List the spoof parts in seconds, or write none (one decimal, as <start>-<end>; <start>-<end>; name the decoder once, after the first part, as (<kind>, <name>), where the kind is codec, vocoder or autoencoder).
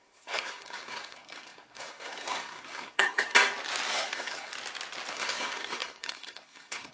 0.0-3.3 (codec, SNAC); 3.9-4.5; 5.1-6.9